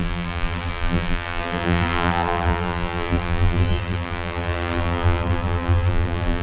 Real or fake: fake